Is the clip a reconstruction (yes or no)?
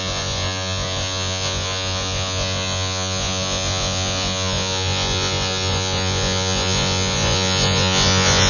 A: yes